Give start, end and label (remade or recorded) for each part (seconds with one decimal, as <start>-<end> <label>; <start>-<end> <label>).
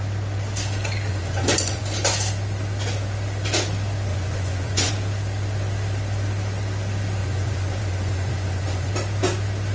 0.0-1.1 recorded; 1.1-1.8 remade; 1.8-4.1 recorded; 4.1-4.9 remade; 4.9-7.2 recorded; 7.2-8.9 remade; 8.9-9.7 recorded